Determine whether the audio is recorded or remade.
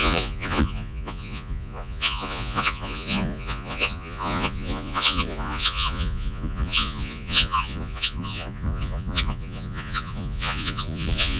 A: remade